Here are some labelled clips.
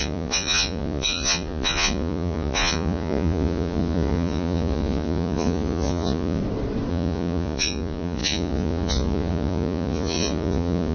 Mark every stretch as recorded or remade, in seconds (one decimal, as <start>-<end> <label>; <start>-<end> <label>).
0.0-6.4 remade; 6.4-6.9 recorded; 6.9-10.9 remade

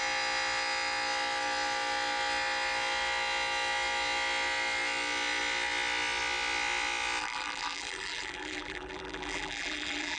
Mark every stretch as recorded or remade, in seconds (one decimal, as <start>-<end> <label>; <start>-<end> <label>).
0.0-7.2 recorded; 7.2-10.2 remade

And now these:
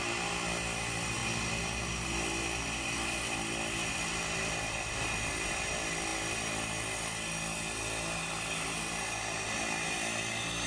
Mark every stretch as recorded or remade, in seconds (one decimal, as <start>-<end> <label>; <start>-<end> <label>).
0.0-10.7 recorded

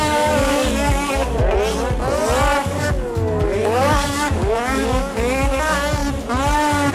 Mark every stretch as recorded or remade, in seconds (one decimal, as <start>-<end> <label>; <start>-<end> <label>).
0.0-1.4 remade; 1.4-2.6 recorded; 2.6-6.0 remade; 6.0-6.9 recorded

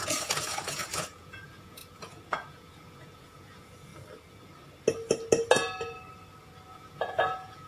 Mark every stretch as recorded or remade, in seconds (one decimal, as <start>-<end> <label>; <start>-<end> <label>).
0.0-3.9 remade; 3.9-6.7 recorded; 6.7-7.7 remade